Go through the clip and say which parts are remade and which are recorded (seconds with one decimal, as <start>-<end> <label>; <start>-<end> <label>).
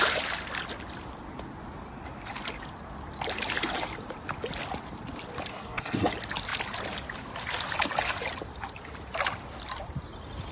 0.0-5.5 recorded; 5.5-6.1 remade; 6.1-10.5 recorded